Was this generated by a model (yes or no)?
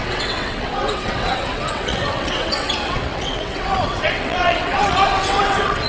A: yes